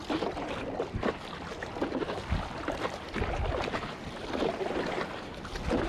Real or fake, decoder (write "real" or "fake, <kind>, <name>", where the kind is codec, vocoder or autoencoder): real